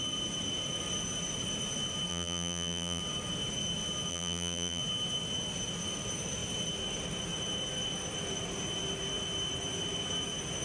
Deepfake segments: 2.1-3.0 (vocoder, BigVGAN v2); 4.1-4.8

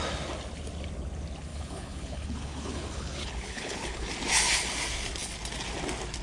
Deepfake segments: 1.5-4.1 (codec, HILCodec)

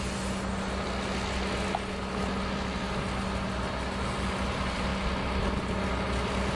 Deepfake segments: none

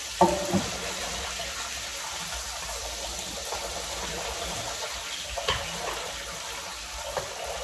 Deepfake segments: none

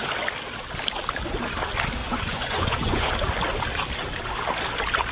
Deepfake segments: 2.0-3.1 (vocoder, Vocos)